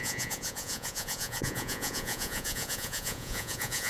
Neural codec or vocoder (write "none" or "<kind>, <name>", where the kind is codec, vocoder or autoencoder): vocoder, Vocos